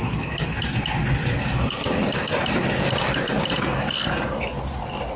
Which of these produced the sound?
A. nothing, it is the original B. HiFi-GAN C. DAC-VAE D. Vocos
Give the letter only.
A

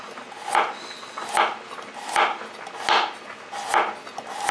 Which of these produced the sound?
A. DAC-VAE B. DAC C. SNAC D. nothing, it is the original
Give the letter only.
D